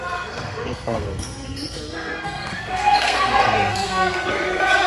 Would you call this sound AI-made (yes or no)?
yes